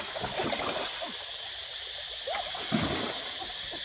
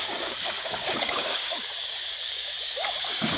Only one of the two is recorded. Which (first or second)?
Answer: first